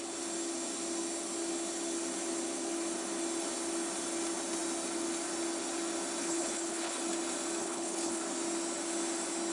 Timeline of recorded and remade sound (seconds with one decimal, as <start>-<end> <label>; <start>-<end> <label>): 0.0-6.2 recorded; 6.2-7.0 remade; 7.0-7.6 recorded; 7.6-8.2 remade; 8.2-9.5 recorded